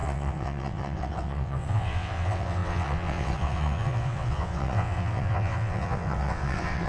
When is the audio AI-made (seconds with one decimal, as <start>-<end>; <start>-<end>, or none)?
0.0-6.9